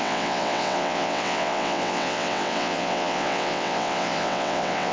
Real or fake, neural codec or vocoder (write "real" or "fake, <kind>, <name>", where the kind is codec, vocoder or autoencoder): fake, vocoder, WaveNeXt